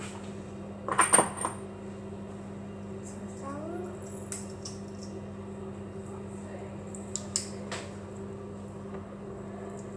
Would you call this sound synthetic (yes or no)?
no